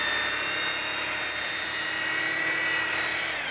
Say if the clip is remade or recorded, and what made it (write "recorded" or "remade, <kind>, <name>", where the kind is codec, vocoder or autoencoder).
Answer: recorded